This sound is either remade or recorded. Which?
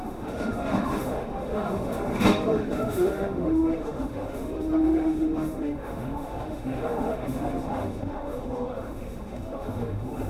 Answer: remade